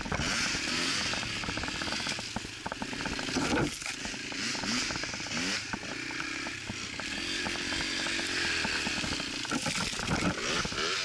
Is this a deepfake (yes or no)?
no